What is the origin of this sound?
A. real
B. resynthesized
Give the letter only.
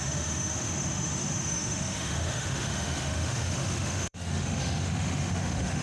B